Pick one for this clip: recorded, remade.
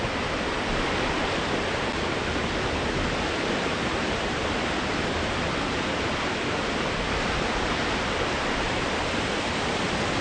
recorded